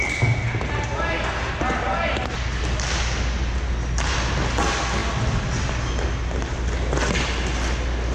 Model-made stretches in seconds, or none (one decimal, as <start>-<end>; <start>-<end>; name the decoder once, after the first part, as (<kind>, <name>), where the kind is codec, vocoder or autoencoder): none